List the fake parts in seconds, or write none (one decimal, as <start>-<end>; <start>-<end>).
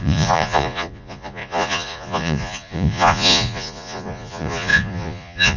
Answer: 0.0-5.6